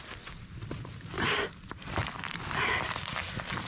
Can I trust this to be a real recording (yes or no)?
yes